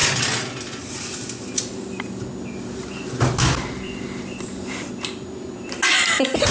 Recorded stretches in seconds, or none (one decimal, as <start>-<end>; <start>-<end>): 0.0-6.5